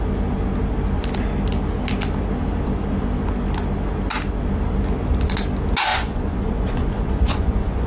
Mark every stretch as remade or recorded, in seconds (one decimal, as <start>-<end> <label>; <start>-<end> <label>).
0.0-5.9 recorded; 5.9-7.9 remade